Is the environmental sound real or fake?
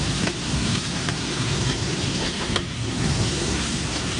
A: fake